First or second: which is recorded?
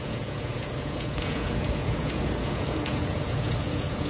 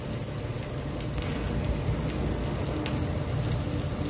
second